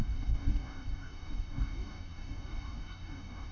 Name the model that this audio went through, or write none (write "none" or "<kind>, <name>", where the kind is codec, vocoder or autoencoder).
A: codec, DAC